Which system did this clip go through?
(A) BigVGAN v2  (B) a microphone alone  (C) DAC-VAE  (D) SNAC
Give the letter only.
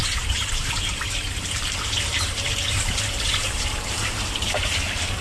A